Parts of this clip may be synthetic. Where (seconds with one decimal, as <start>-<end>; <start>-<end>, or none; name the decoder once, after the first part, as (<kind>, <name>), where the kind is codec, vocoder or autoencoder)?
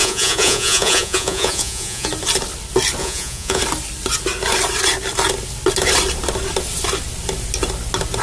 0.0-2.1 (vocoder, Vocos); 3.0-3.6